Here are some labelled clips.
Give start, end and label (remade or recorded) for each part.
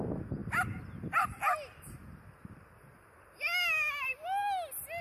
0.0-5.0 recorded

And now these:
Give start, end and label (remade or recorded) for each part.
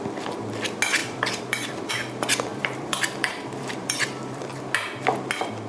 0.0-1.0 recorded; 1.0-1.9 remade; 1.9-2.5 recorded; 2.5-4.6 remade; 4.6-5.7 recorded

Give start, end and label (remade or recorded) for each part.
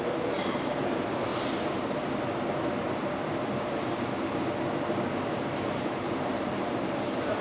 0.0-1.3 remade; 1.3-5.7 recorded; 5.7-7.4 remade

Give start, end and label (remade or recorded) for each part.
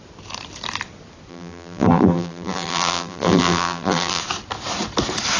0.0-1.3 recorded; 1.3-4.2 remade; 4.2-5.4 recorded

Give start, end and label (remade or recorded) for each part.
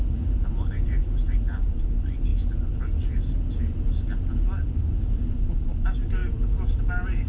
0.0-2.3 remade; 2.3-4.8 recorded; 4.8-7.3 remade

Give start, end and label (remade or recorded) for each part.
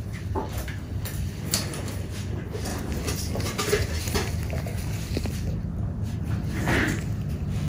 0.0-0.4 remade; 0.4-1.8 recorded; 1.8-2.7 remade; 2.7-7.3 recorded; 7.3-7.7 remade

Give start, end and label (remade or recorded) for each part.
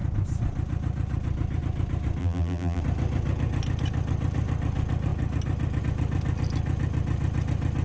0.0-2.2 recorded; 2.2-2.8 remade; 2.8-7.8 recorded